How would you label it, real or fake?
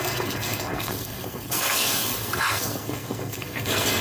fake